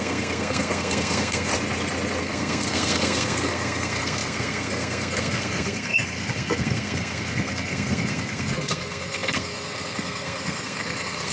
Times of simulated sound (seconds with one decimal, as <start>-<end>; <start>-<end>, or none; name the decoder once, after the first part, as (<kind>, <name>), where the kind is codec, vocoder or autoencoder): 0.0-1.5 (codec, SNAC); 2.2-11.3